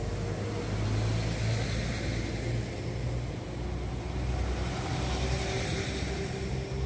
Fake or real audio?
real